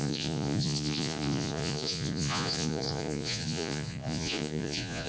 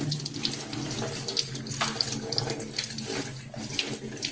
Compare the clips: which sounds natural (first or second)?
second